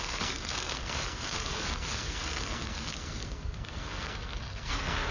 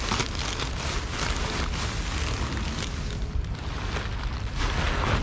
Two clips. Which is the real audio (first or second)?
second